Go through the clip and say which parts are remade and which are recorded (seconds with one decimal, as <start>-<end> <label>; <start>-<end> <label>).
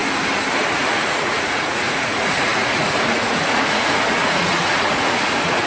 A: 0.0-0.7 recorded; 0.7-5.7 remade